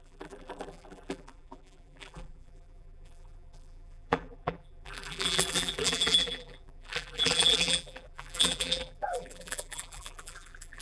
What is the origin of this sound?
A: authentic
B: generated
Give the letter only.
B